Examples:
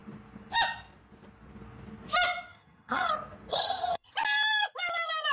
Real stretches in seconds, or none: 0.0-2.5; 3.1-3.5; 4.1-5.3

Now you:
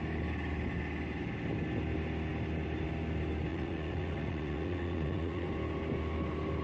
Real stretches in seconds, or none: 0.0-3.5; 5.5-6.6

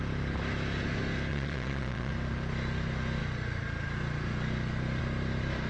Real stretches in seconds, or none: 0.0-1.3; 2.1-5.7

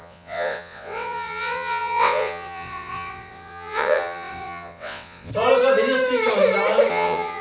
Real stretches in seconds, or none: 5.3-6.9